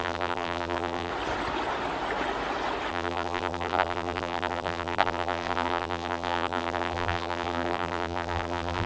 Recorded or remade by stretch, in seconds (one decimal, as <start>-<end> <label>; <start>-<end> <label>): 0.0-1.1 remade; 1.1-2.9 recorded; 2.9-8.9 remade